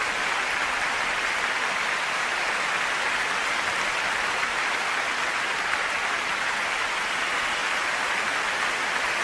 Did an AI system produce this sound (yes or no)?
no